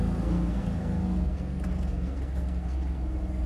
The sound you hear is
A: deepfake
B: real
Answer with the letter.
A